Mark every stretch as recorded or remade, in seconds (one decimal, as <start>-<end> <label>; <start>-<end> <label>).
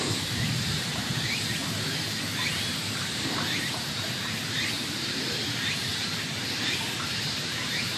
0.0-1.6 remade; 1.6-2.5 recorded; 2.5-5.9 remade; 5.9-6.6 recorded; 6.6-8.0 remade